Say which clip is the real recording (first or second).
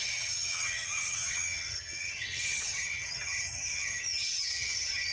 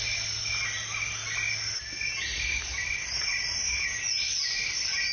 second